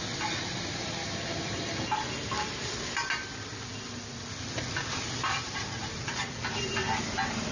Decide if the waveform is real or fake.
real